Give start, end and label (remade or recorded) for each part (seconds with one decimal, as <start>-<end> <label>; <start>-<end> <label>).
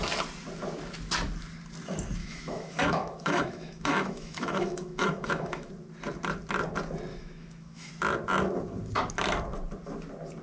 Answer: 0.0-2.2 recorded; 2.2-5.7 remade; 5.7-7.1 recorded; 7.1-7.9 remade; 7.9-10.4 recorded